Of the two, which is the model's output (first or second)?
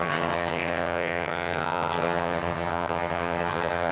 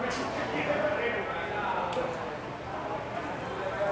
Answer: first